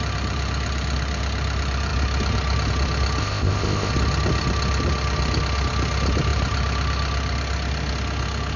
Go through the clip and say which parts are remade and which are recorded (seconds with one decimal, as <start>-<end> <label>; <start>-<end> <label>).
0.0-3.2 recorded; 3.2-3.9 remade; 3.9-8.6 recorded